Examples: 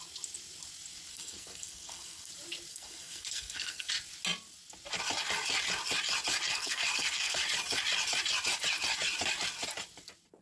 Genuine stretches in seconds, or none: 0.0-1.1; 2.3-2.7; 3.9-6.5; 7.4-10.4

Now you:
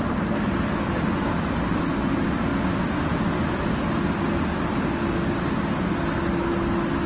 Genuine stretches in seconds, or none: 0.0-7.1

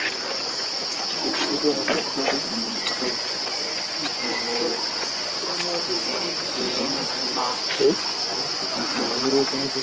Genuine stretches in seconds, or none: none